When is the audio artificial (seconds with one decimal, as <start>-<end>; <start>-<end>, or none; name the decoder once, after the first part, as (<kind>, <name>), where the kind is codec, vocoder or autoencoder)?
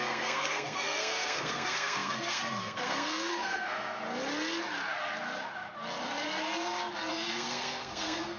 0.0-4.0 (codec, SNAC); 7.1-8.4